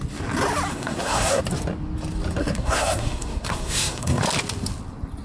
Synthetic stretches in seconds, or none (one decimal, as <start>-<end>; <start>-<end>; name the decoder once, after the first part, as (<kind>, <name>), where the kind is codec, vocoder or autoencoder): 0.7-1.4 (codec, SNAC); 2.4-4.2